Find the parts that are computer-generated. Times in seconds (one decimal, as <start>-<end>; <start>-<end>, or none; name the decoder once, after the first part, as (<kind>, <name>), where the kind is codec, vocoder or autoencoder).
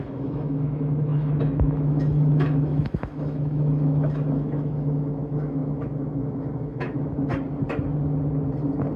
0.0-7.3 (autoencoder, DAC-VAE)